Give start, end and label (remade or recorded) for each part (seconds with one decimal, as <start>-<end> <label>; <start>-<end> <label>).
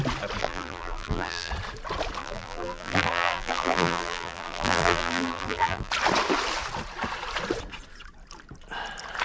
0.0-0.4 recorded; 0.4-1.5 remade; 1.5-2.2 recorded; 2.2-5.9 remade; 5.9-9.2 recorded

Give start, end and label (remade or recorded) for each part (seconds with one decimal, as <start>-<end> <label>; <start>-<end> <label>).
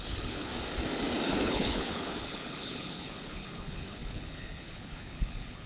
0.0-0.5 remade; 0.5-1.3 recorded; 1.3-5.7 remade